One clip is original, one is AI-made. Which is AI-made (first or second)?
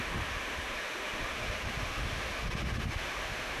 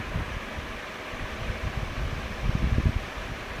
first